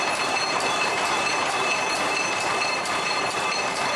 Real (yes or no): no